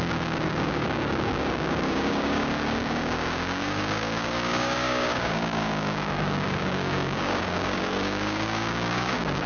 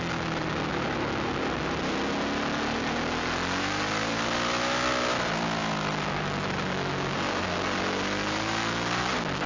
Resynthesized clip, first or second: first